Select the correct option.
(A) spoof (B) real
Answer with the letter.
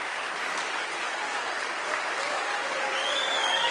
A